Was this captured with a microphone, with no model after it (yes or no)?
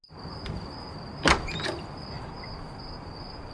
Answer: yes